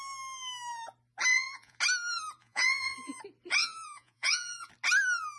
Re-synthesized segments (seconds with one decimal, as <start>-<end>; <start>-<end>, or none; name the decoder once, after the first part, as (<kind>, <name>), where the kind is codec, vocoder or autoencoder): 1.3-1.8 (vocoder, Vocos); 2.4-3.2; 3.6-4.7